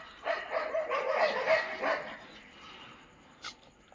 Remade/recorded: recorded